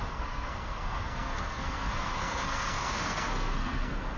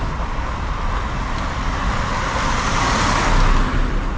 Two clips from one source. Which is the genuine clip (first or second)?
second